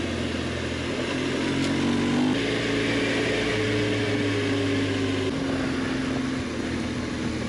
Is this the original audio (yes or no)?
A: yes